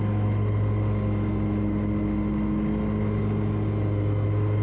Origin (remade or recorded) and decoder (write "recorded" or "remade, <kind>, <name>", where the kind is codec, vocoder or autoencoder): recorded